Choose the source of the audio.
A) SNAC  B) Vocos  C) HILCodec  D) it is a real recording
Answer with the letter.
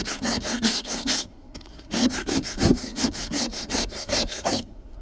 A